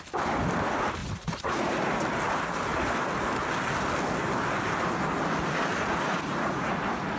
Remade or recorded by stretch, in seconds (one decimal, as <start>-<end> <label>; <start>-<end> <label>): 0.0-1.0 recorded; 1.0-1.8 remade; 1.8-5.7 recorded; 5.7-6.7 remade; 6.7-7.2 recorded